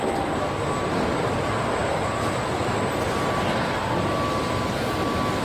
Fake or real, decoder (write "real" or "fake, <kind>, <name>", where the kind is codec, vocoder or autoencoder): real